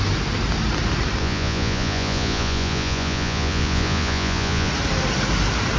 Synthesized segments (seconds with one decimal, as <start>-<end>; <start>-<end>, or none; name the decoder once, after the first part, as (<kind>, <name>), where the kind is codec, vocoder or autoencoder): 1.2-4.7 (vocoder, Vocos)